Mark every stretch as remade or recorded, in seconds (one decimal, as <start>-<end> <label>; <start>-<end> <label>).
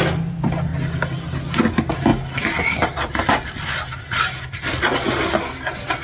0.0-0.7 remade; 0.7-1.7 recorded; 1.7-2.1 remade; 2.1-2.6 recorded; 2.6-6.0 remade